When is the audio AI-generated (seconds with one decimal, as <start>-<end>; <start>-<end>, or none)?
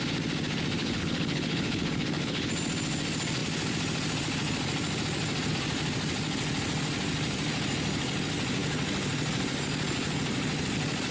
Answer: 0.8-2.5